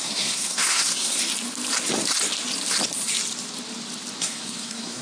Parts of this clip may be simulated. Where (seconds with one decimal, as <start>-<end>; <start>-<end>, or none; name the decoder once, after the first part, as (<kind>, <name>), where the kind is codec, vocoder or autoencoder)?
0.0-1.2 (codec, SNAC); 4.2-5.0